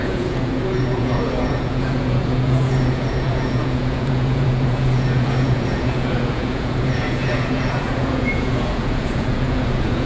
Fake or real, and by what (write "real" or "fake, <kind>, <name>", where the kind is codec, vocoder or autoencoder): fake, vocoder, Vocos